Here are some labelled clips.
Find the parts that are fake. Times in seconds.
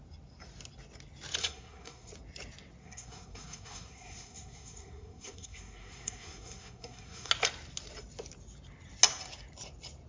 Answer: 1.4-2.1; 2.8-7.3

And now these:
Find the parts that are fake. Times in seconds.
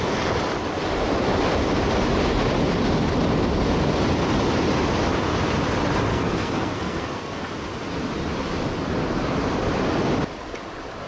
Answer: 6.1-7.5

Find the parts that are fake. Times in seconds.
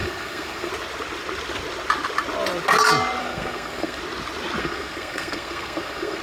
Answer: 0.0-0.7; 3.2-4.0; 4.6-6.2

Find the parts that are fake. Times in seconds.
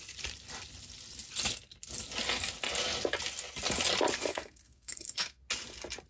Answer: 4.3-5.4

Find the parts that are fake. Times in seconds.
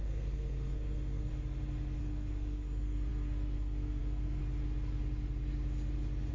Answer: 0.0-1.3; 2.0-4.4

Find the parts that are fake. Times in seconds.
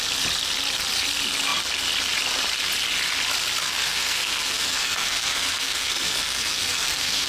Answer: 3.6-7.3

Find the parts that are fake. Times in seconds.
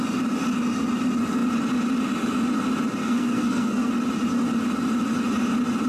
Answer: 3.0-3.9